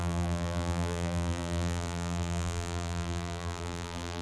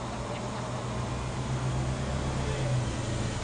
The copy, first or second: first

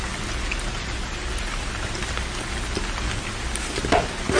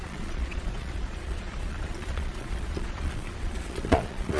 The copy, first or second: second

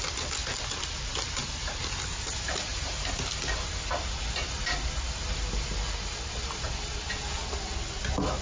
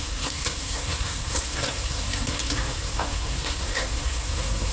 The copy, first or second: second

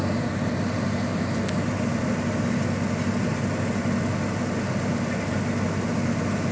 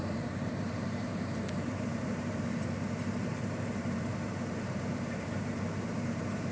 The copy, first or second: second